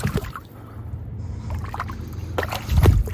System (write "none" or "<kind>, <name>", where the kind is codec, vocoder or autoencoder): none